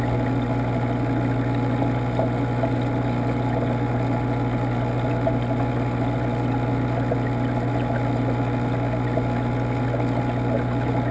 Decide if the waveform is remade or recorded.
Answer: recorded